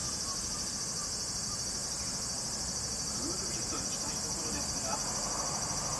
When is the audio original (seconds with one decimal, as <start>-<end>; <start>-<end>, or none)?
0.0-6.0